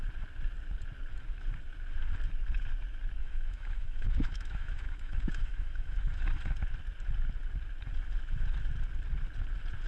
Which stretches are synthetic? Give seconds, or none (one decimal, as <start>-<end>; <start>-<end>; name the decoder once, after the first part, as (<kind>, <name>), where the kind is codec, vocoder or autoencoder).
3.2-6.2 (autoencoder, DAC-VAE)